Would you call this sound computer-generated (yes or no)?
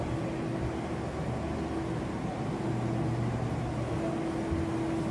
no